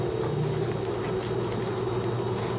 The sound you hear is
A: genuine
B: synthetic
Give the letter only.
A